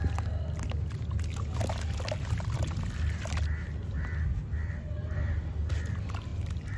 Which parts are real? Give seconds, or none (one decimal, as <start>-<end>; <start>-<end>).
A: 0.0-6.3